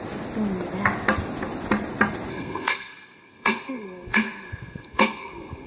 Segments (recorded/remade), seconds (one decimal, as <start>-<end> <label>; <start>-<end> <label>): 0.0-2.3 recorded; 2.3-5.7 remade